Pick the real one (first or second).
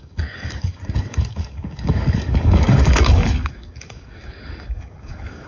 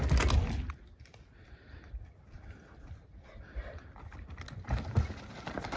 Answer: second